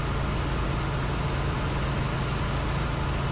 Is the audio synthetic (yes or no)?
no